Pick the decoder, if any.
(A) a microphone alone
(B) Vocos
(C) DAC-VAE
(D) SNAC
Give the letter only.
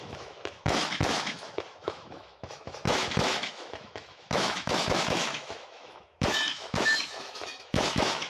C